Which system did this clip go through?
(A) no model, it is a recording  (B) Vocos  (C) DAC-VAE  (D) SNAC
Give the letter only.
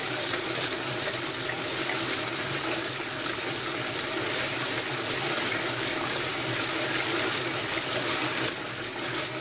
A